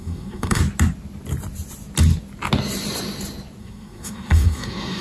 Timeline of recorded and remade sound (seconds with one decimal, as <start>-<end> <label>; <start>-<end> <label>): 0.0-0.6 remade; 0.6-3.6 recorded; 3.6-5.0 remade